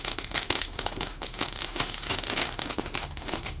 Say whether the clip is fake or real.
fake